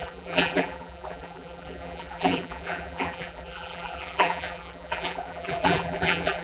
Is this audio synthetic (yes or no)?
yes